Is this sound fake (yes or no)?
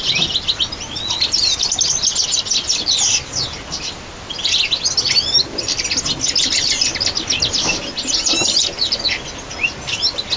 no